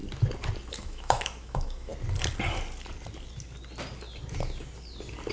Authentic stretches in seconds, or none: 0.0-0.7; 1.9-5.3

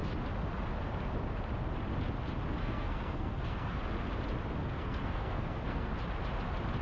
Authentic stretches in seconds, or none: 0.0-2.6; 3.8-4.6; 5.9-6.8